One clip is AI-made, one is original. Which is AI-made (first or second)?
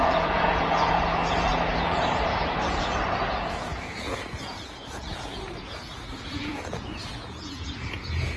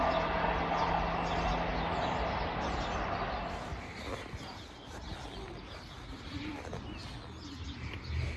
first